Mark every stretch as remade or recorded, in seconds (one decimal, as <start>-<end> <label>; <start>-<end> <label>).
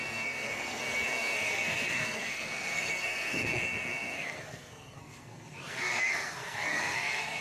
0.0-7.4 remade